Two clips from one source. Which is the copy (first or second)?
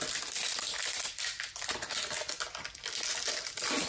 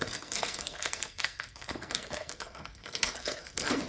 second